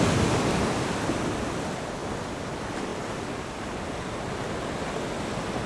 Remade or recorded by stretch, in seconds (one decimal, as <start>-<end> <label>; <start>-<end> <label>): 0.0-2.9 recorded; 2.9-3.8 remade; 3.8-5.7 recorded